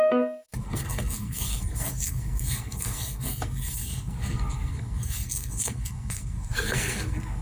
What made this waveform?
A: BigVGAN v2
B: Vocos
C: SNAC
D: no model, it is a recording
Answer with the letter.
C